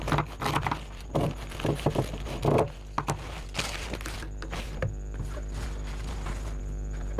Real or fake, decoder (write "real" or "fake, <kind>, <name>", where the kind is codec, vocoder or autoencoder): real